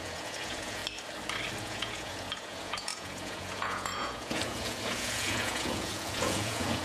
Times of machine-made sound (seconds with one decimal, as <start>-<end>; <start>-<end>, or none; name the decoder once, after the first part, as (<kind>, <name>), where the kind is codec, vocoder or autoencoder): 0.0-0.8 (vocoder, Vocos); 1.6-6.8